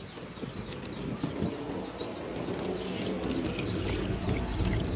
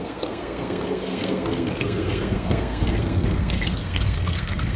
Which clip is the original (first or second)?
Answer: first